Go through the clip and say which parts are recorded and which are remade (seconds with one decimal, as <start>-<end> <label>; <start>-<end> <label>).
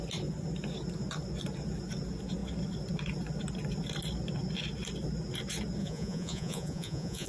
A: 0.0-5.8 recorded; 5.8-7.3 remade